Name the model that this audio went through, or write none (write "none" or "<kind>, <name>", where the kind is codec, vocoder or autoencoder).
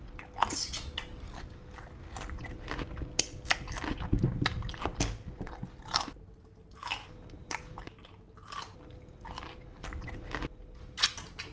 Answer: none